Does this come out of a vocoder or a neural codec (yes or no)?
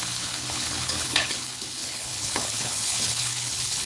yes